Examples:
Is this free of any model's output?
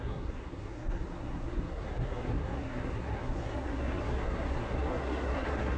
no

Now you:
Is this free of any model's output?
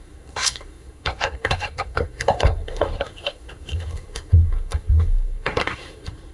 no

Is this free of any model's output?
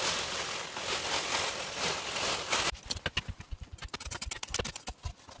yes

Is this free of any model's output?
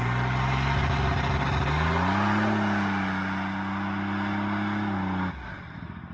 yes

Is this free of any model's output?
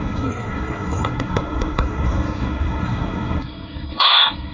no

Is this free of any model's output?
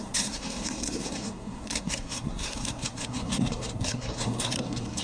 no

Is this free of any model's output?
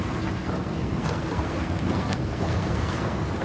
no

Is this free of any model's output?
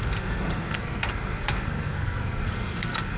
no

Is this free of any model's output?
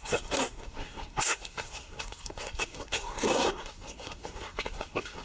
no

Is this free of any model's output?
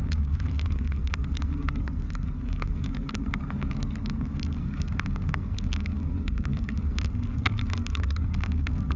no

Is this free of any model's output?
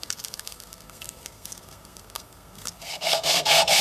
no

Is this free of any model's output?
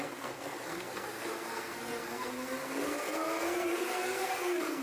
no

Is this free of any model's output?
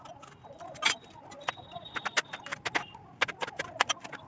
yes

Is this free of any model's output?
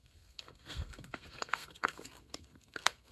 no